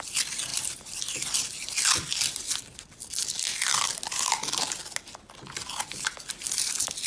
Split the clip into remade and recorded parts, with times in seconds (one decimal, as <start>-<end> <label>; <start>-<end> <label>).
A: 0.0-7.1 recorded

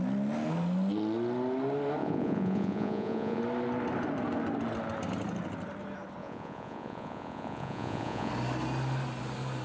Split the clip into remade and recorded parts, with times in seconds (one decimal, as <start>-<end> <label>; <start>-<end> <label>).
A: 0.0-2.0 recorded; 2.0-3.4 remade; 3.4-6.2 recorded; 6.2-8.3 remade; 8.3-9.6 recorded

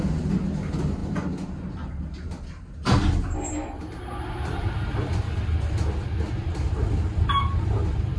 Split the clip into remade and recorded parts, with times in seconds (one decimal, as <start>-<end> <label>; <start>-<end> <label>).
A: 0.0-8.2 recorded